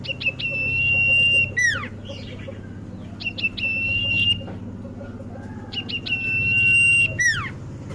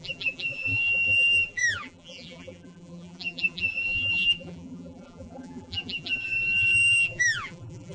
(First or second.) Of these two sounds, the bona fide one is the first